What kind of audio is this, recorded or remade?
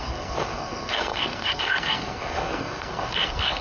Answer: remade